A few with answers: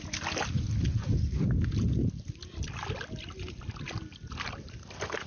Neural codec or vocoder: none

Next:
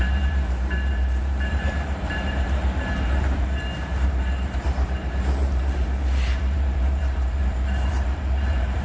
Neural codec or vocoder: vocoder, BigVGAN v2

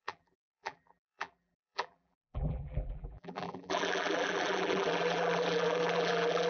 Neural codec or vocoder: vocoder, BigVGAN v2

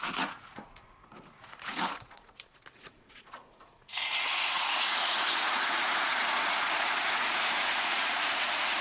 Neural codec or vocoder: vocoder, Vocos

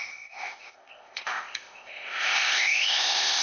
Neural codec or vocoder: codec, ZipCodec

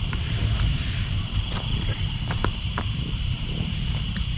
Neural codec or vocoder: vocoder, BigVGAN v2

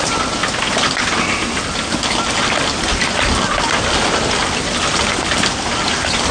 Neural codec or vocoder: none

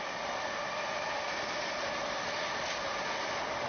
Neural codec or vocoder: none